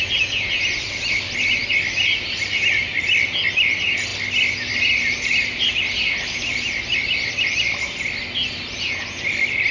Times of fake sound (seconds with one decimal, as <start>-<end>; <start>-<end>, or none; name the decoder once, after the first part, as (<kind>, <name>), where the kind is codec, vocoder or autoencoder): none